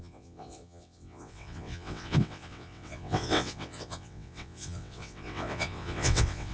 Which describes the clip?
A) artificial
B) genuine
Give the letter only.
A